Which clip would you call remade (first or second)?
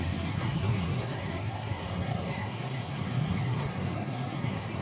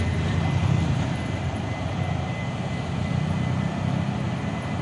first